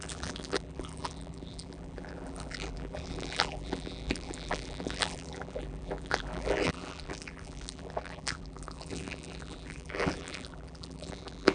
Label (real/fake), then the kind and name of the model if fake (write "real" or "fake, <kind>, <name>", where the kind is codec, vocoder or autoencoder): fake, vocoder, BigVGAN v2